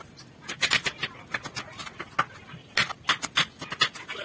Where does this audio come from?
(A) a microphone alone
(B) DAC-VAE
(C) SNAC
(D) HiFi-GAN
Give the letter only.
A